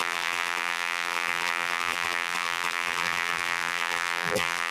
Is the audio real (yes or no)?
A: no